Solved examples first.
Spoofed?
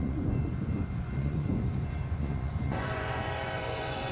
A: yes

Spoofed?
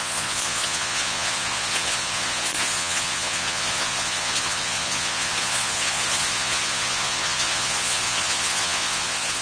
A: yes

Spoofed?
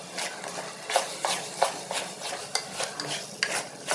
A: no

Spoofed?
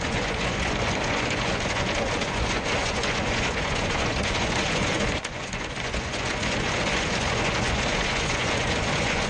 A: yes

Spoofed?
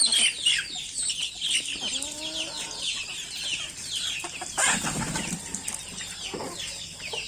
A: no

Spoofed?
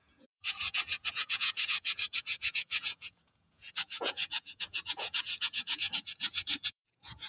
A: yes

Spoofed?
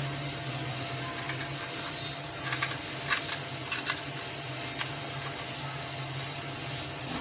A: no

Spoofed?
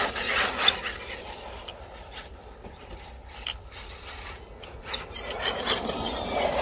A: no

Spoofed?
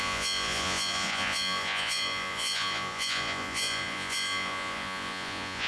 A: yes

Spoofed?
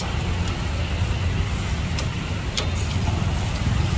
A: no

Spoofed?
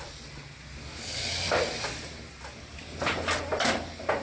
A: no